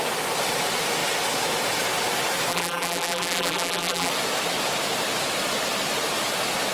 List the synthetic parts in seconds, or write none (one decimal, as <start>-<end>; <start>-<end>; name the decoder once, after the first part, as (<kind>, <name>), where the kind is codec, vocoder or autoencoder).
2.5-4.1 (vocoder, BigVGAN v2)